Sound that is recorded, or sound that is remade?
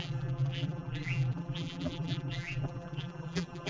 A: remade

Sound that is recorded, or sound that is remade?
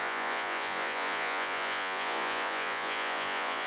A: remade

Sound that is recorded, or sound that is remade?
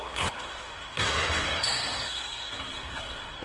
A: remade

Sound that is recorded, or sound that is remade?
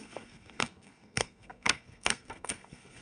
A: remade